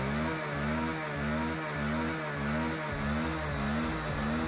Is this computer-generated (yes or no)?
no